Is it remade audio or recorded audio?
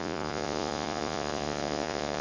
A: remade